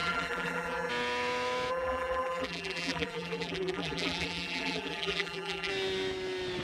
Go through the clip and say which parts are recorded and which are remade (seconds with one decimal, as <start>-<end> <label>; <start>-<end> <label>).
0.0-0.9 remade; 0.9-1.7 recorded; 1.7-5.7 remade; 5.7-6.6 recorded